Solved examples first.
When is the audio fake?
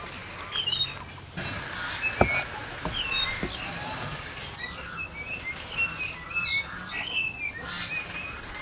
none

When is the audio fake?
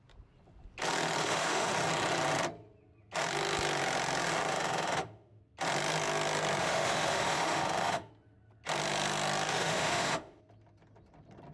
1.2-1.7 (autoencoder, DAC-VAE); 4.5-5.4; 6.6-8.1; 9.5-10.4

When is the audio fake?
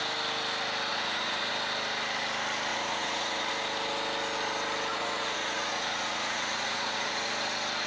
0.9-1.5 (vocoder, Vocos); 2.7-3.5; 4.9-7.3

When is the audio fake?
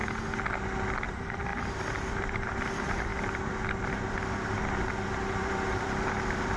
1.1-1.5 (vocoder, BigVGAN v2); 2.1-3.1; 4.6-6.6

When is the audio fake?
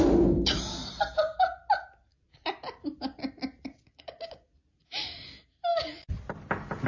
none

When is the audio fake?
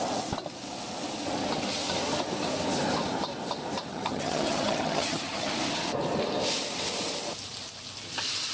3.9-5.5 (vocoder, HiFi-GAN)